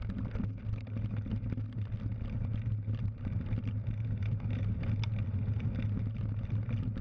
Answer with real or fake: real